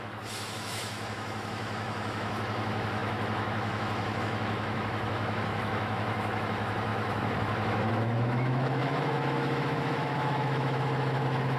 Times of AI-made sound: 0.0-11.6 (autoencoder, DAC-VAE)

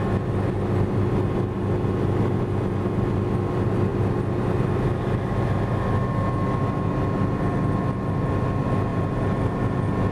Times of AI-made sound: none